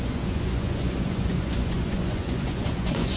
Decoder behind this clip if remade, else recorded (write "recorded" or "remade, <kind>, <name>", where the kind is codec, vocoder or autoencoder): remade, vocoder, Vocos